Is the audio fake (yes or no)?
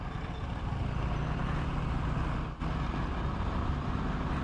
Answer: no